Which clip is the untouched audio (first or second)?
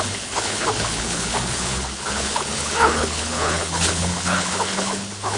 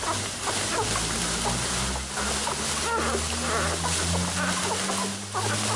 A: second